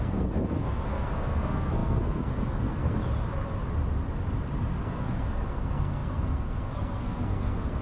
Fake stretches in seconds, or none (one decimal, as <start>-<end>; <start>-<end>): 0.0-3.0; 4.8-7.8